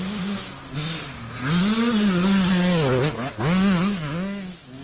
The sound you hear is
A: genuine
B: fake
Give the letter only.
A